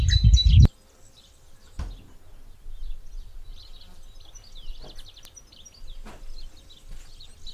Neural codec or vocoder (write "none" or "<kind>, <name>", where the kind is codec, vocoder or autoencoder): none